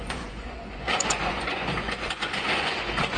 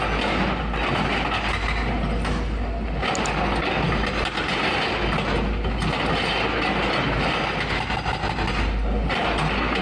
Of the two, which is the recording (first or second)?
second